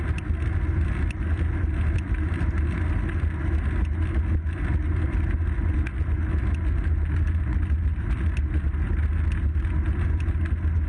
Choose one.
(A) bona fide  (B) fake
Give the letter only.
A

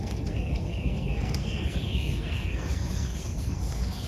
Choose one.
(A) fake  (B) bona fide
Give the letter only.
A